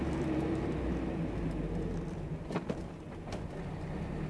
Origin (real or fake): real